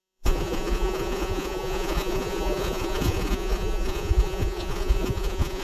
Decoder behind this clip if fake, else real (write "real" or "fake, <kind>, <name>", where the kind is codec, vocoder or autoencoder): fake, vocoder, Vocos